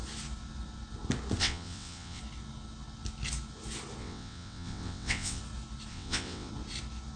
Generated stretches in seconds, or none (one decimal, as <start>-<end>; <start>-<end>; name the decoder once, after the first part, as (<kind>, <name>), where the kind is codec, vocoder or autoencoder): 1.4-2.2 (vocoder, WaveNeXt); 4.0-5.4; 5.9-6.5